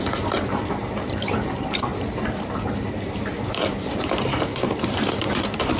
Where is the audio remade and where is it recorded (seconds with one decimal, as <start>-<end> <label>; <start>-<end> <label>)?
0.0-5.8 remade